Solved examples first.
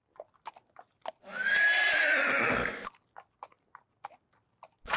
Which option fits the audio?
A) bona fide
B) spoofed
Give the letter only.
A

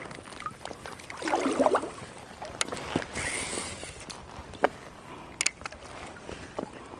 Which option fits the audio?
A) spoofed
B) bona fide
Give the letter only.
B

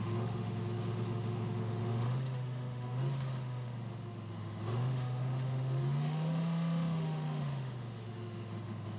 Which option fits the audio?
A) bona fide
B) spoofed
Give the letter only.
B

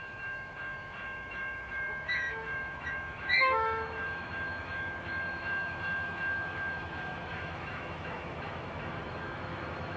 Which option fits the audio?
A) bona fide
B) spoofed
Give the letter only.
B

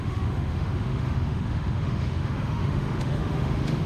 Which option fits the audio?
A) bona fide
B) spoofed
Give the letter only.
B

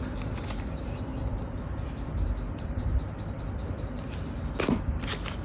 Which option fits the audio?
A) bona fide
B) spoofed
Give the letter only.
A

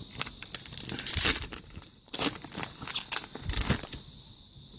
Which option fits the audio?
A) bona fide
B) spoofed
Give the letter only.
A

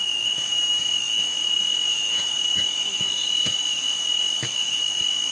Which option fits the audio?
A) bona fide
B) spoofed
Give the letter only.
B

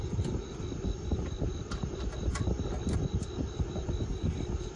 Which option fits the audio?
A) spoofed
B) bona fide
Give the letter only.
B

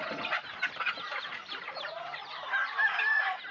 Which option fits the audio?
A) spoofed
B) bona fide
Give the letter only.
B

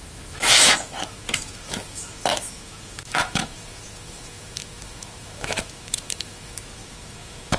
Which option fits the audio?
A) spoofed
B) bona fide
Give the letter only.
A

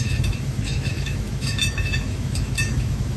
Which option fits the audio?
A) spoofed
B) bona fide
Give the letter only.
A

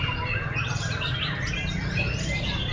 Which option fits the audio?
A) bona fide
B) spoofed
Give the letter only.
A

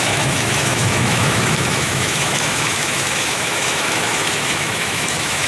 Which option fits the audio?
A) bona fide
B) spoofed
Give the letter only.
B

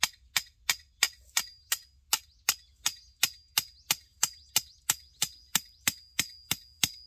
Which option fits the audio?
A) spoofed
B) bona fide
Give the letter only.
B